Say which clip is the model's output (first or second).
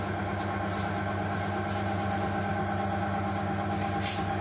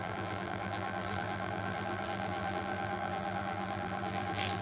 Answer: second